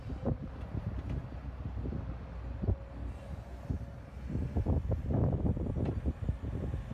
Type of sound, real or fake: real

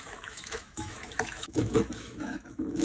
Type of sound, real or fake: fake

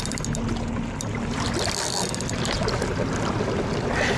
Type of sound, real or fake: real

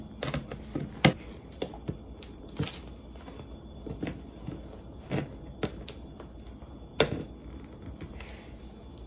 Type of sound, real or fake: real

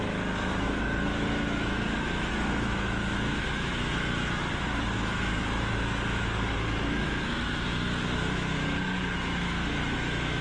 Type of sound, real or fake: fake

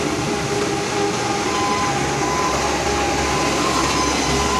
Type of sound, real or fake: real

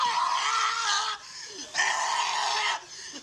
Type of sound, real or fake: real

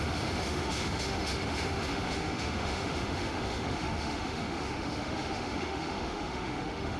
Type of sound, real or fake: fake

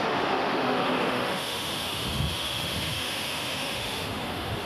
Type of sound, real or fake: fake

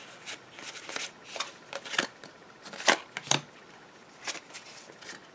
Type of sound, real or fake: real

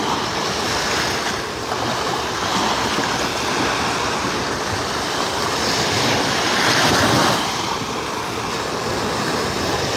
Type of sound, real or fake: real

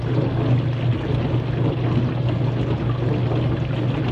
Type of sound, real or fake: real